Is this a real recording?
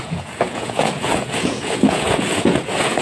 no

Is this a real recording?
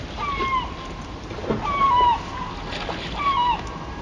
yes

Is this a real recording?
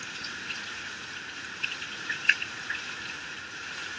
no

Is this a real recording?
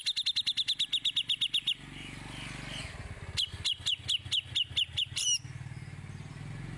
yes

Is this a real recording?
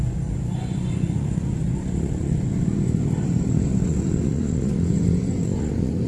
no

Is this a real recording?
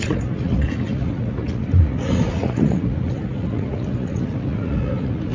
no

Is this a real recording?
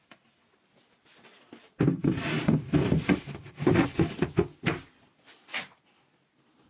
yes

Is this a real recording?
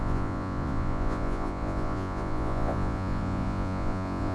no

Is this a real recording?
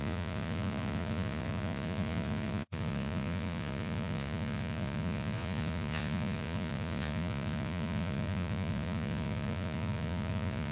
no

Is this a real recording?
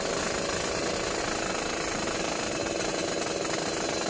yes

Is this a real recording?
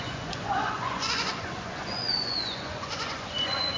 no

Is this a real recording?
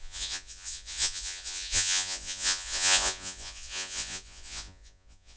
no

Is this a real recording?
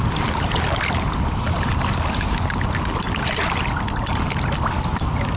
yes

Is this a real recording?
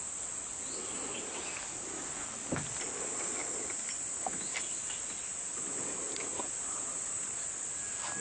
yes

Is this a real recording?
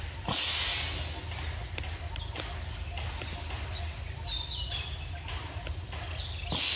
yes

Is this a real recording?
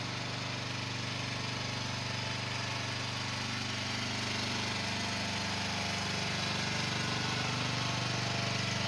yes